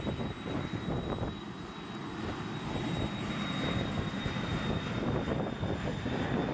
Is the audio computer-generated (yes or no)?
no